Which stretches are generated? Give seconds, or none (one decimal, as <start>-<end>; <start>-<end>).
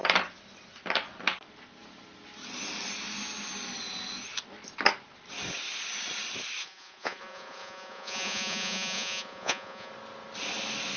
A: 6.6-9.9